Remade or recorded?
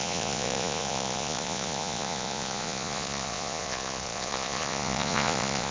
remade